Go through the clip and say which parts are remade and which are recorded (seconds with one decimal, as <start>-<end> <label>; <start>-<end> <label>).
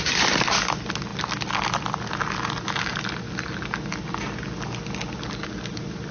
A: 0.0-6.1 recorded